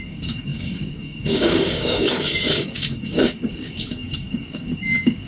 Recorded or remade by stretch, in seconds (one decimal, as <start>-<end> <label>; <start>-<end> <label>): 0.0-5.3 remade